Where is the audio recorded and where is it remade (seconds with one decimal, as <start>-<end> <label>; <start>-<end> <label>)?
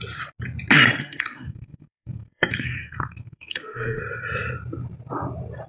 0.0-1.0 recorded; 1.0-4.0 remade; 4.0-5.7 recorded